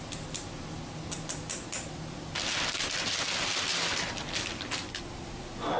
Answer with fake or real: real